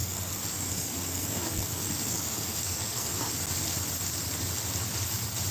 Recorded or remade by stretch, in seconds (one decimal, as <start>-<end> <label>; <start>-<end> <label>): 0.0-3.3 remade; 3.3-5.5 recorded